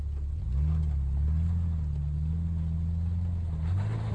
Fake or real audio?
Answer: real